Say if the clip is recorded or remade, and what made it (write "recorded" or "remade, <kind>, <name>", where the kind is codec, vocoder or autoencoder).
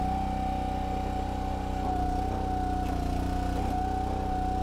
recorded